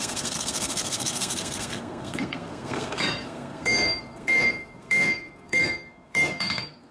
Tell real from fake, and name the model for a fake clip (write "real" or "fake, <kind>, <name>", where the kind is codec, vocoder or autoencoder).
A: fake, codec, SNAC